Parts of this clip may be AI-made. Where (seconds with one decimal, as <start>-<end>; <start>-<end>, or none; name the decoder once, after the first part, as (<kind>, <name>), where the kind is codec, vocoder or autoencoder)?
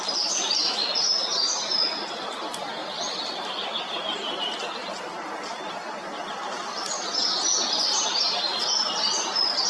none